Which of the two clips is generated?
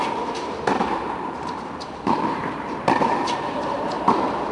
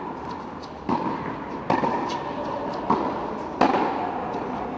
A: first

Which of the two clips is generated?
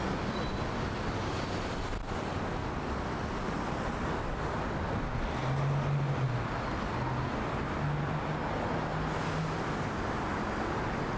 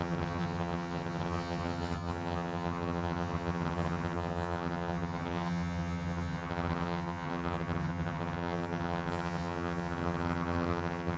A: second